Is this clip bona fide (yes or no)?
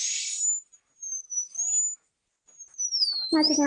yes